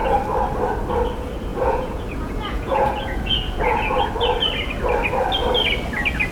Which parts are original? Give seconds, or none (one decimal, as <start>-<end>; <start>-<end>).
0.0-1.5; 4.0-6.3

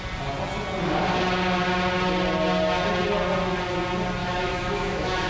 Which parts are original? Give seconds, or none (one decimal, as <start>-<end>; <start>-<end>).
0.0-4.2

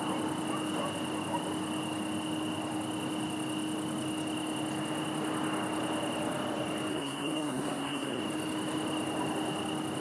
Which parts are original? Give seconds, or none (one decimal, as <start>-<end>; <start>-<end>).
0.0-6.9; 8.2-10.0

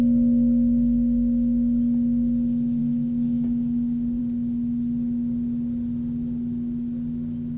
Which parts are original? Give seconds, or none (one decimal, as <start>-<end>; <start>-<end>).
0.0-2.8; 4.2-7.6